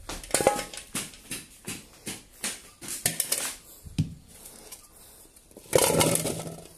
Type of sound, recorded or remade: recorded